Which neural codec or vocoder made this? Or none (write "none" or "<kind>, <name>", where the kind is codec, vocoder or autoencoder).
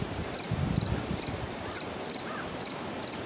vocoder, BigVGAN v2